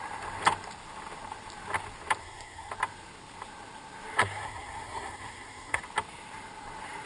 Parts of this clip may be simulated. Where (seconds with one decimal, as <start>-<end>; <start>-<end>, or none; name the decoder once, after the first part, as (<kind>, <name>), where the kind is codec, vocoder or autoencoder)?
2.2-2.7 (codec, SNAC); 4.2-5.8